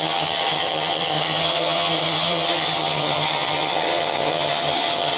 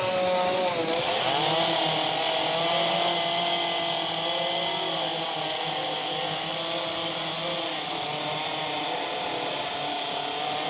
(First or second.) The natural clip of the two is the second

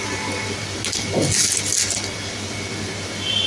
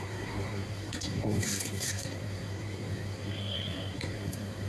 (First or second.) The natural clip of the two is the first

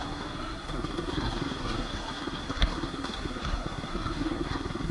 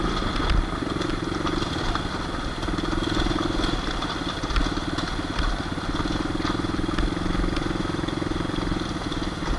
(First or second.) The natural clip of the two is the second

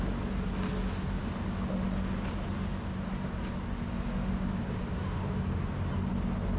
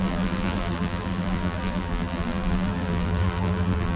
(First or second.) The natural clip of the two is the first